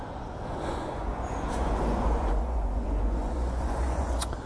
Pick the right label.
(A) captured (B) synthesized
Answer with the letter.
B